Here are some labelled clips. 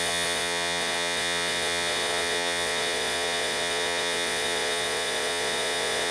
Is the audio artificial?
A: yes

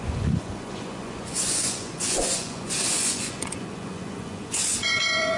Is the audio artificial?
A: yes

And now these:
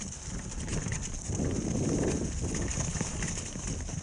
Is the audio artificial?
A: no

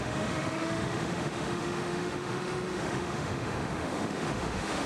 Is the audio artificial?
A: yes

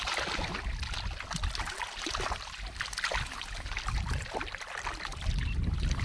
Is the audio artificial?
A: no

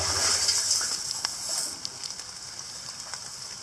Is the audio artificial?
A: no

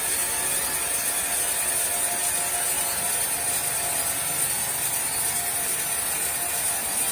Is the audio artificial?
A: no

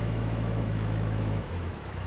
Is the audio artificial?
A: yes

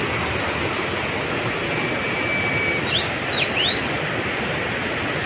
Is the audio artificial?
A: no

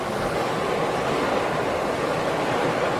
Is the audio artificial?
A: no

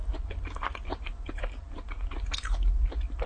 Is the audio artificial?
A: no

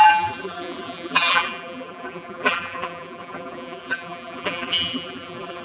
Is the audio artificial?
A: yes